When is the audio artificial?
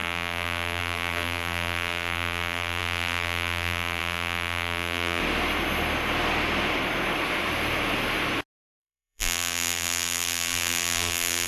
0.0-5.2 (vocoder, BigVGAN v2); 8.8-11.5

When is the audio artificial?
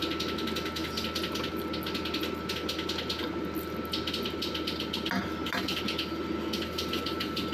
0.8-1.5 (vocoder, BigVGAN v2)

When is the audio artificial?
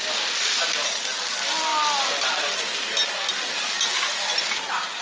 none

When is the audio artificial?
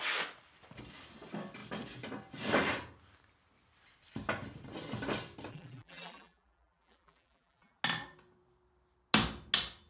5.5-7.8 (vocoder, BigVGAN v2)